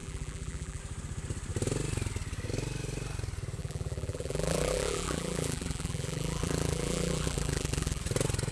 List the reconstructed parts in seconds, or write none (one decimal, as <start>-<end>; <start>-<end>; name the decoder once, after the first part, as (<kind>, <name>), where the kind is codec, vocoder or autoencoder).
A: 0.0-0.8 (vocoder, BigVGAN v2); 3.6-8.0